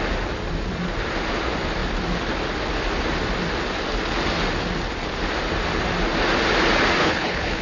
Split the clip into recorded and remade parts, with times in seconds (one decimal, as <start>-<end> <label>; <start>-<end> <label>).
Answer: 0.0-7.0 recorded; 7.0-7.6 remade